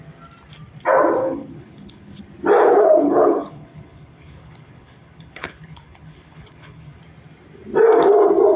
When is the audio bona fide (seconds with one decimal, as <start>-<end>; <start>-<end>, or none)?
0.0-1.2; 2.2-2.6; 7.0-8.6